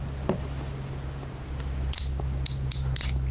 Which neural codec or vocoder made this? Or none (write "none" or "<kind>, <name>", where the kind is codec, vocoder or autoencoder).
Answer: none